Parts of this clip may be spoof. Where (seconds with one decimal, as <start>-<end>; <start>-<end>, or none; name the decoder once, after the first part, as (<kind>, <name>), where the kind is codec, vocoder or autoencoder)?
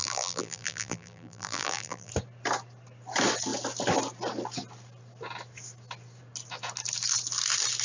0.0-2.1 (vocoder, BigVGAN v2)